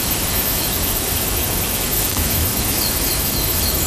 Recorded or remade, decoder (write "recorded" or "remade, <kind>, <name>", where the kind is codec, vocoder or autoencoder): remade, autoencoder, DAC-VAE